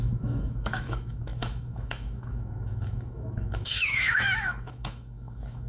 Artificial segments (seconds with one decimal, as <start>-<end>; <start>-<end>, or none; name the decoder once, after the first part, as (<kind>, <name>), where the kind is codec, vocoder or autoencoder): 0.0-5.7 (autoencoder, DAC-VAE)